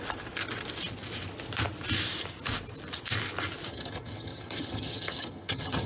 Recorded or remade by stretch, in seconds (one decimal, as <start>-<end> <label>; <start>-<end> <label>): 0.0-3.7 recorded; 3.7-5.9 remade